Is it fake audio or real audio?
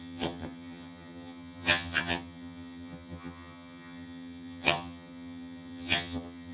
fake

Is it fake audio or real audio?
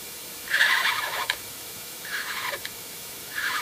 fake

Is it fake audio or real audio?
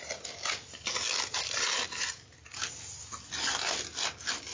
real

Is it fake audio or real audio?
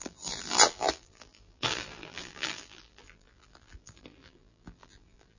fake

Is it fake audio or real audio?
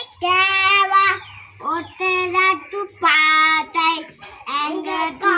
real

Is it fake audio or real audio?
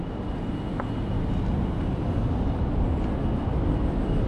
real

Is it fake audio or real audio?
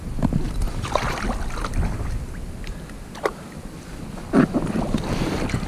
real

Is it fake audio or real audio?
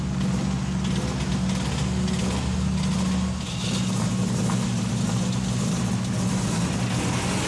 real